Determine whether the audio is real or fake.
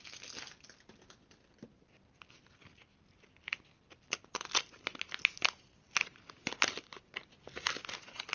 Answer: real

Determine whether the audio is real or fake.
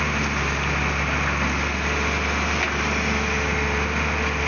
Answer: real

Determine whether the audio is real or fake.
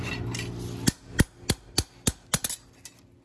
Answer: real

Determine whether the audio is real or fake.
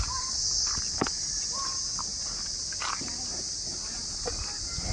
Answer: real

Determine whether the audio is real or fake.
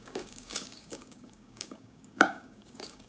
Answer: fake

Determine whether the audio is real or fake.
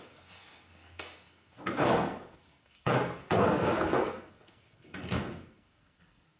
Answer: fake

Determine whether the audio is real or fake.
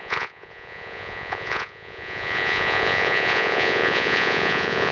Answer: fake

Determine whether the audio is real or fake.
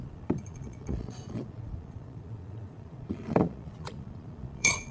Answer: fake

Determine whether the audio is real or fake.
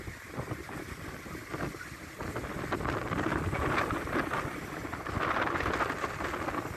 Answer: real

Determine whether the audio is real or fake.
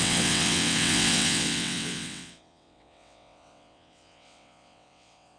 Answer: fake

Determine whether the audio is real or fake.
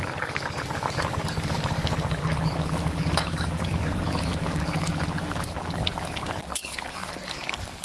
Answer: fake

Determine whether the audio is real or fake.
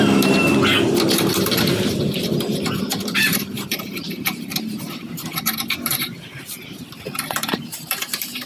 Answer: fake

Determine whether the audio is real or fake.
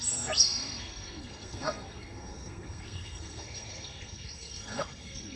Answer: fake